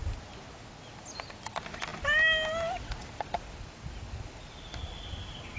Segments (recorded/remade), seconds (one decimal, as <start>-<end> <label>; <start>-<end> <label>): 0.0-5.6 recorded

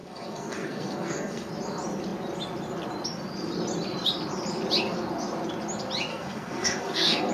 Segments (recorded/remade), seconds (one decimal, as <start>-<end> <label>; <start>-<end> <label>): 0.0-1.5 remade; 1.5-6.1 recorded; 6.1-7.3 remade

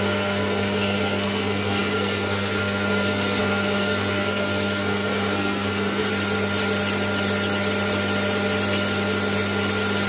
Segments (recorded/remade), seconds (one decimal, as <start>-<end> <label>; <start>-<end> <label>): 0.0-6.1 remade; 6.1-10.1 recorded

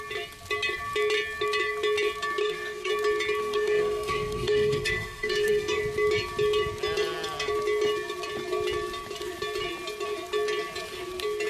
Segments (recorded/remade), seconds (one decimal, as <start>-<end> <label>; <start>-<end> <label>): 0.0-2.4 recorded; 2.4-2.9 remade; 2.9-3.4 recorded; 3.4-5.8 remade; 5.8-11.5 recorded

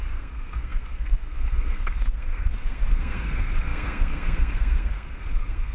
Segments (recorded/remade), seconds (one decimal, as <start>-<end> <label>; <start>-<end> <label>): 0.0-5.7 remade